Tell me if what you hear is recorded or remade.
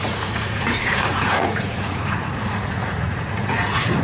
remade